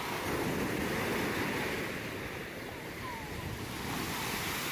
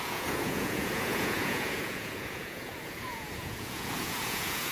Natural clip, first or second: first